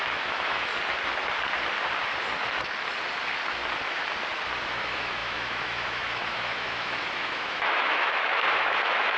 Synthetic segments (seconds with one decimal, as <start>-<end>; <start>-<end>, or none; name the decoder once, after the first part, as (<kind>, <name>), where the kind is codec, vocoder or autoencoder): 0.0-0.7 (autoencoder, DAC-VAE); 4.7-9.2